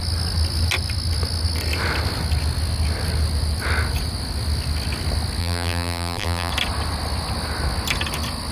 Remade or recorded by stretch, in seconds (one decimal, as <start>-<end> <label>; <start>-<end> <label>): 0.0-5.4 recorded; 5.4-6.5 remade; 6.5-8.5 recorded